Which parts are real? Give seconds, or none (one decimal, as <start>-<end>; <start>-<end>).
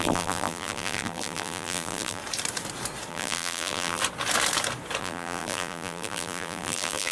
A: 2.2-3.1; 4.0-5.0